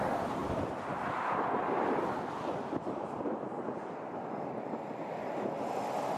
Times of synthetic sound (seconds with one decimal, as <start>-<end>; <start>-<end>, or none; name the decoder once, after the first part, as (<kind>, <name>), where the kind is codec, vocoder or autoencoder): none

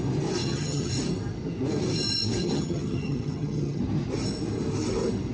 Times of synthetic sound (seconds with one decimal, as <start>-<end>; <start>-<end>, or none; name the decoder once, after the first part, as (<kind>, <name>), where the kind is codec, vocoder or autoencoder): 0.4-0.9 (vocoder, HiFi-GAN); 2.4-3.8

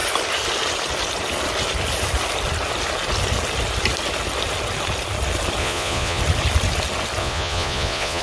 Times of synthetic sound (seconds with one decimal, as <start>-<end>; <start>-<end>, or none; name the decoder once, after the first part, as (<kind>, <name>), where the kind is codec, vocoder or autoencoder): 5.6-6.2 (vocoder, Vocos); 7.2-8.2

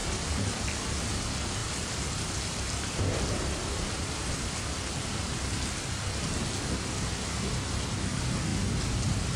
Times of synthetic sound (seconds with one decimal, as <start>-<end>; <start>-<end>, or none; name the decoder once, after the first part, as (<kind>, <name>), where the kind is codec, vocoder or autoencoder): 0.0-1.1 (vocoder, BigVGAN v2); 1.6-4.3; 8.5-9.4

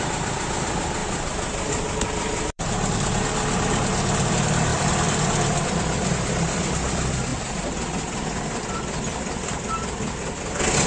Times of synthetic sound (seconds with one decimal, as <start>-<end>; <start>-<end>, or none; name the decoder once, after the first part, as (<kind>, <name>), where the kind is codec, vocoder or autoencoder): 0.0-10.9 (vocoder, BigVGAN v2)

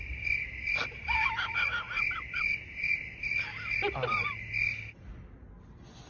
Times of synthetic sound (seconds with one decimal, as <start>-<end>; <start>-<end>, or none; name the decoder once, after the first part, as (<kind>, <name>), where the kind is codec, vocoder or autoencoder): none

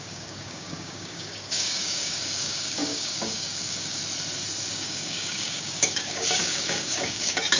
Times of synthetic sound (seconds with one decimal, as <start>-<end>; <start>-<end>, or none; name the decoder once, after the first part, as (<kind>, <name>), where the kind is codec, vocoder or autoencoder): 0.0-4.0 (codec, DAC); 4.7-7.6